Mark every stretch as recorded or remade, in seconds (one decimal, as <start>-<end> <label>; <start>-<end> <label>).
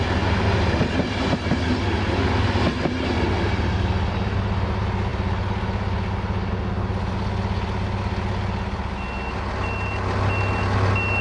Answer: 0.0-11.2 recorded